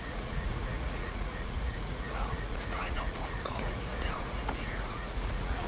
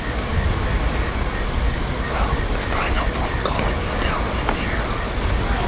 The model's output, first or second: first